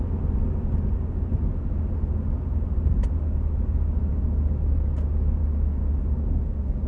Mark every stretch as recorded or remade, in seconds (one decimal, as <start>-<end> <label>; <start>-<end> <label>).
0.0-6.9 recorded